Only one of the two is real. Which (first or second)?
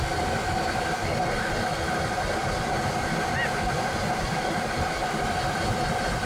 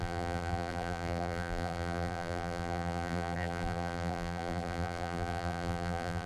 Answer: first